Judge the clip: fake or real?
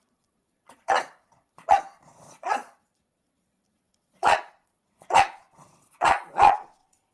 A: fake